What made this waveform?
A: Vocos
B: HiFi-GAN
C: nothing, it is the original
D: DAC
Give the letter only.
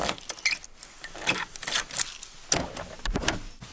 C